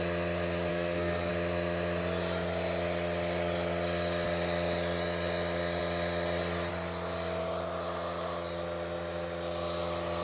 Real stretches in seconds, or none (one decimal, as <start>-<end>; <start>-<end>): 0.0-0.7; 1.3-10.2